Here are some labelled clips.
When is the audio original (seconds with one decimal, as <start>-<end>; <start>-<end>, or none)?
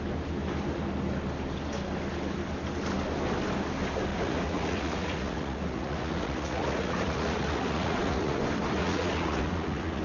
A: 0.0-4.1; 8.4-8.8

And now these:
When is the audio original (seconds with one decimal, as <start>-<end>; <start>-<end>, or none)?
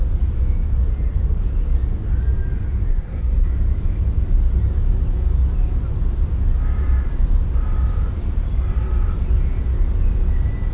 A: 0.0-2.9; 3.5-10.7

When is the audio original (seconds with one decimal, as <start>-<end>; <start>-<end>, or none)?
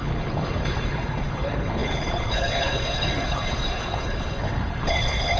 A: none